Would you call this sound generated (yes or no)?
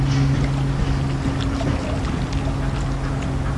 no